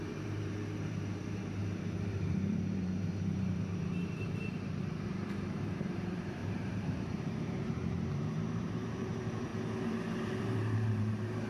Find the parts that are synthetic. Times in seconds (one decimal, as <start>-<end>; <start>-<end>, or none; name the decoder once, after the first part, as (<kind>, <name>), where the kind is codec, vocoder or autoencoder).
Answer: 0.0-9.5 (vocoder, BigVGAN v2); 10.4-11.5